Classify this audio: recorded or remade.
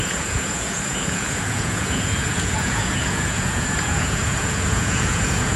remade